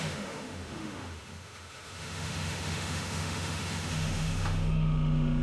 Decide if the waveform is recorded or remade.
remade